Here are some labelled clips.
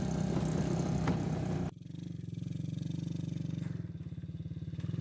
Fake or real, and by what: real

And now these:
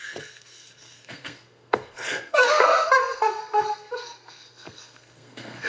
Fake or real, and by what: fake, codec, SNAC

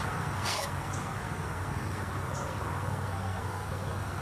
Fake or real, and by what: fake, codec, SNAC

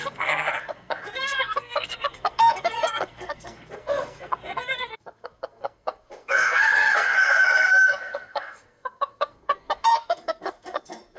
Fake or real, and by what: fake, codec, SNAC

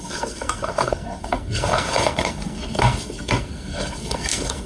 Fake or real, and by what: fake, codec, SNAC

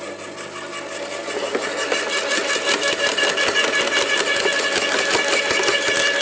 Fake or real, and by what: real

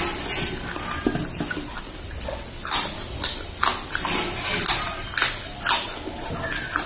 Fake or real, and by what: real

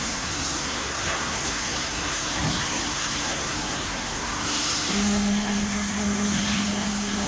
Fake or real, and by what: fake, codec, SNAC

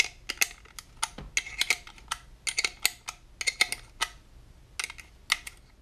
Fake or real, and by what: real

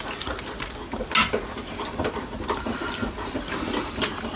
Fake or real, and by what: real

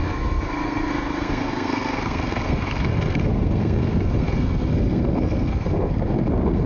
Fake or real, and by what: fake, codec, SNAC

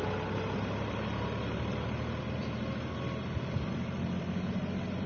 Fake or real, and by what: real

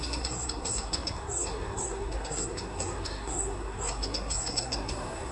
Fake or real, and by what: fake, codec, SNAC